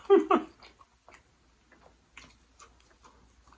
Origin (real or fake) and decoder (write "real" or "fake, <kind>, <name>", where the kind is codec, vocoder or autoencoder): real